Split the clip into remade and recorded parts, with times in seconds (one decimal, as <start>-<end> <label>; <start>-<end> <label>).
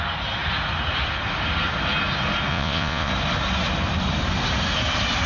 0.0-2.5 recorded; 2.5-3.1 remade; 3.1-5.3 recorded